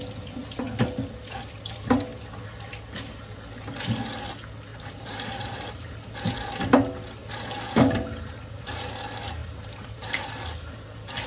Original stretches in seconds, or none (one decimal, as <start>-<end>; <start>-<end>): 0.0-4.7; 5.9-7.2; 8.9-9.4; 10.3-11.3